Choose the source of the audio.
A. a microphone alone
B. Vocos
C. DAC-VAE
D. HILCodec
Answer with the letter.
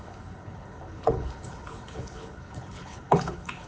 D